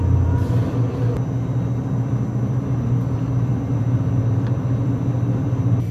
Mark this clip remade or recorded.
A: remade